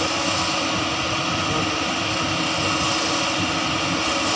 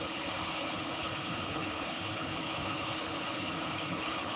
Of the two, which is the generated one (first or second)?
second